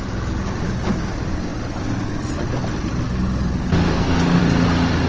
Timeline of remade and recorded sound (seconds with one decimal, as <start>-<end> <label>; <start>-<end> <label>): 0.0-3.9 recorded; 3.9-4.4 remade; 4.4-5.1 recorded